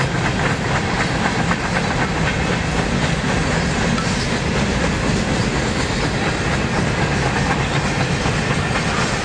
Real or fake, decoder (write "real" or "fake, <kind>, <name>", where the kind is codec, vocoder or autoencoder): real